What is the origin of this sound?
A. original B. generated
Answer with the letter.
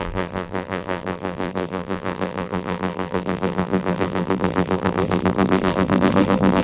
B